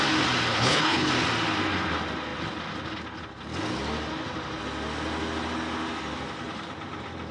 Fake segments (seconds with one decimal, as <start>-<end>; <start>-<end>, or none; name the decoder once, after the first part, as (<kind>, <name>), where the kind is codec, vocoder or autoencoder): 0.5-1.1 (codec, HILCodec)